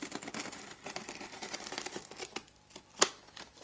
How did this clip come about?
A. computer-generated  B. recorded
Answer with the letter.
B